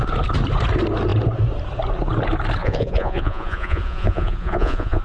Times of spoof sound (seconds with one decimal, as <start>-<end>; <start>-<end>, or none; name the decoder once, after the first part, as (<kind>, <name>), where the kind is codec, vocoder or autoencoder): 2.6-5.0 (vocoder, Vocos)